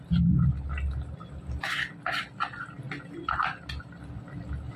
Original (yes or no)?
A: yes